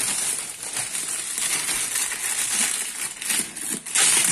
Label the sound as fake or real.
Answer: real